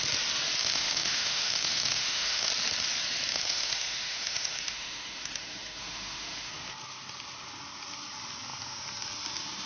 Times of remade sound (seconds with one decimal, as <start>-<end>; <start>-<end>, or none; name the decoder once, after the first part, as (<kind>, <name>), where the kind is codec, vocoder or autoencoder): 0.6-2.5 (autoencoder, DAC-VAE); 3.3-6.5